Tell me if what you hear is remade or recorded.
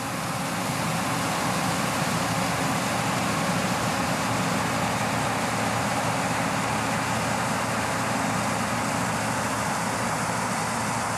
recorded